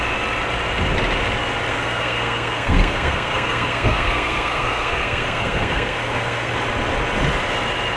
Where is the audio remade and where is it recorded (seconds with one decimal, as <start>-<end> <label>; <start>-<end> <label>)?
0.0-1.7 recorded; 1.7-6.5 remade; 6.5-8.0 recorded